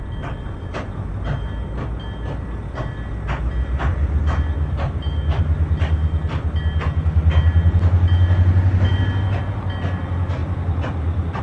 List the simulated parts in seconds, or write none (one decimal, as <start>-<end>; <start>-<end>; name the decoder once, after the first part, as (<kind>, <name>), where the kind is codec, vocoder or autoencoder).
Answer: 3.9-5.4 (vocoder, BigVGAN v2); 10.4-11.4